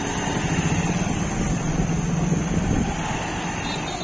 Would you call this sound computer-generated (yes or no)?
no